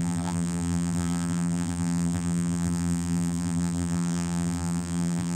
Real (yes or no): no